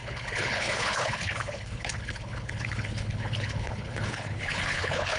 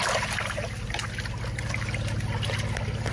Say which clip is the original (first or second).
second